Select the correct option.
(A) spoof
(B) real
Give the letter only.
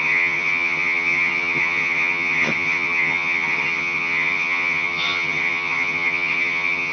A